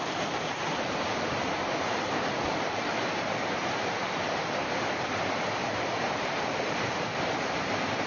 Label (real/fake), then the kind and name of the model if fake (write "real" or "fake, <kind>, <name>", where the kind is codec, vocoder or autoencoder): fake, vocoder, BigVGAN v2